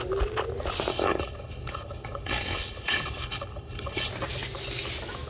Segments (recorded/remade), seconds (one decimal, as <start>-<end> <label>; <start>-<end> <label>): 0.0-0.9 recorded; 0.9-4.1 remade; 4.1-5.3 recorded